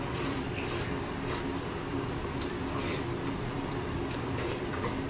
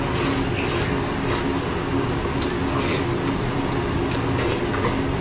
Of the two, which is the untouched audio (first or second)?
second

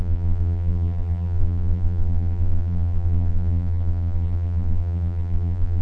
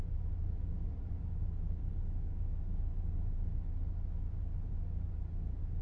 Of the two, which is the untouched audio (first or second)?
second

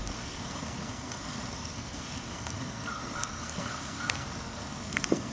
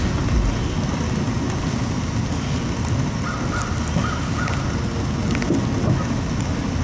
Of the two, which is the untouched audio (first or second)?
second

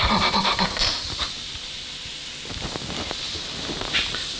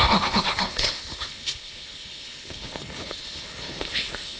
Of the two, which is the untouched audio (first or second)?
first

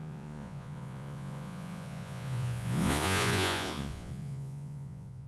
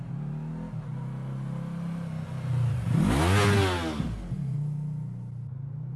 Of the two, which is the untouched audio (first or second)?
second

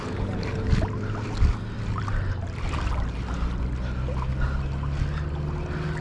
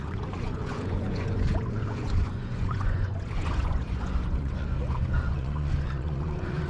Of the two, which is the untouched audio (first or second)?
first